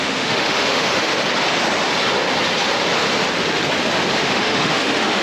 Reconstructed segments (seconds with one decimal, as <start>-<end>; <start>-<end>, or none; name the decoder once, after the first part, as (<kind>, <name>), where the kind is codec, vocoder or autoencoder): 0.0-1.1 (autoencoder, DAC-VAE); 4.2-5.2